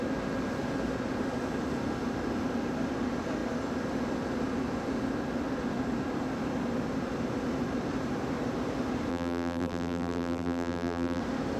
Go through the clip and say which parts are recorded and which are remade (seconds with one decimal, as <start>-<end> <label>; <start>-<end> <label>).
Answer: 0.0-9.1 recorded; 9.1-11.2 remade; 11.2-11.6 recorded